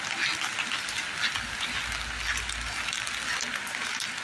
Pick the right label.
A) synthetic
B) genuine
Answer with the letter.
B